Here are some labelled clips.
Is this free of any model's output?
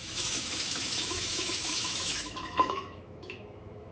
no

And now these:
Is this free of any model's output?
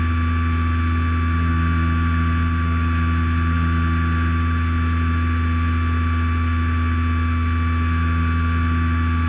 yes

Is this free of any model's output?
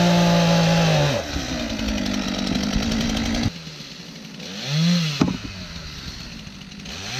yes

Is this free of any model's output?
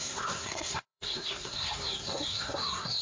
no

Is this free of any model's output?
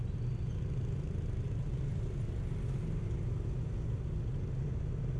yes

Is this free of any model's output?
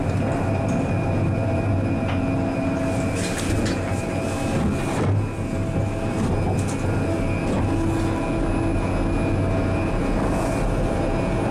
yes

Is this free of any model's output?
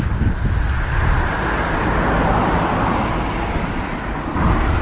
yes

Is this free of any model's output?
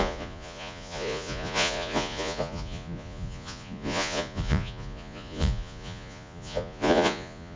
no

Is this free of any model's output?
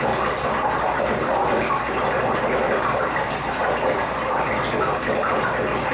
yes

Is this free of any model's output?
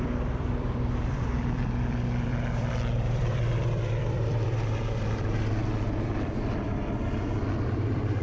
no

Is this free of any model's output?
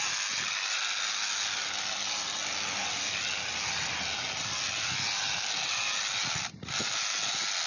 yes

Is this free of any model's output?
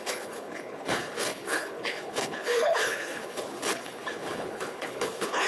no